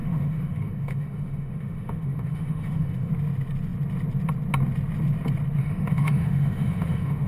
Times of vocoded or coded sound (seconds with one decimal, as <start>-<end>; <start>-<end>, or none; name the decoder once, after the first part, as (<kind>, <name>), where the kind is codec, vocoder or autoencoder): 0.0-3.1 (autoencoder, DAC-VAE); 5.6-7.3

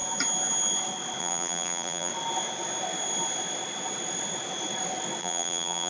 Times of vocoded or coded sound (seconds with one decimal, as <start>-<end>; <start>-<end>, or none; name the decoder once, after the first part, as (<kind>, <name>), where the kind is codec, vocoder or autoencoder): 1.2-2.1 (vocoder, BigVGAN v2); 5.2-5.9

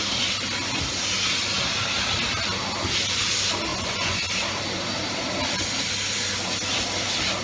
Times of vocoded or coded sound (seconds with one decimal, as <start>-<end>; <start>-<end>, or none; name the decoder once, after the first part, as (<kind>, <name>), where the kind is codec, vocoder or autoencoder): 3.7-4.3 (vocoder, Vocos)

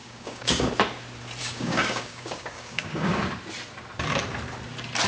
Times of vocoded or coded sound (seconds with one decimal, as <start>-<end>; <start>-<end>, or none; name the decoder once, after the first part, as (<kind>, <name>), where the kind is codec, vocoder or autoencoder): 0.0-0.7 (codec, DAC); 1.4-3.2

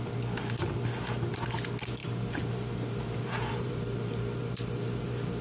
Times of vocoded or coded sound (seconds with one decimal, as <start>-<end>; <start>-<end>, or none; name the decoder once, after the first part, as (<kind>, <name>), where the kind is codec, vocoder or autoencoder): 2.0-5.4 (vocoder, BigVGAN v2)